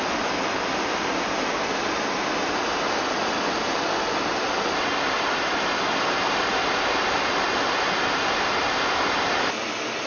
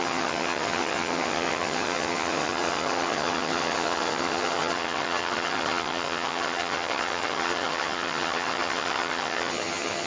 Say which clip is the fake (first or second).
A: second